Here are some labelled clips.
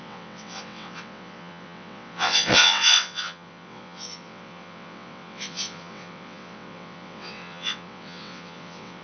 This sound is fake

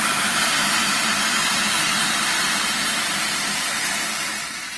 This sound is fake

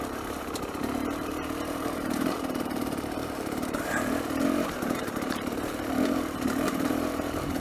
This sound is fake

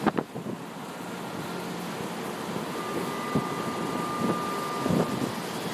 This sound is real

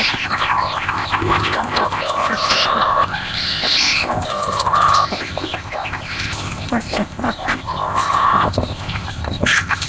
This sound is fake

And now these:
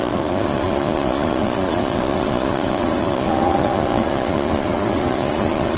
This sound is fake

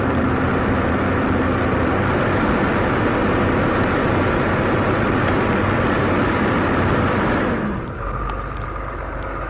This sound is fake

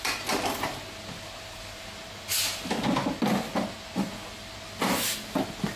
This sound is real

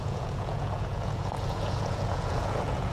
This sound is fake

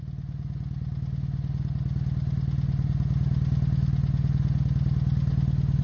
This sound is real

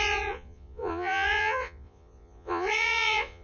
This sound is fake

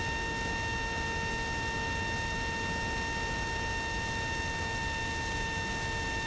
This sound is real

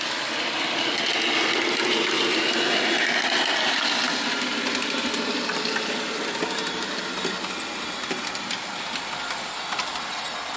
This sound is real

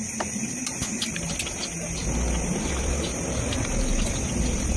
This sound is real